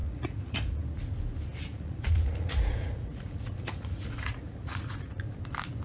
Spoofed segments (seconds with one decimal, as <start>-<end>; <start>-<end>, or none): 0.0-0.8; 1.7-5.2